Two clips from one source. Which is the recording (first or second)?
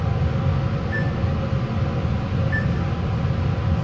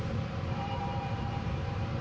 first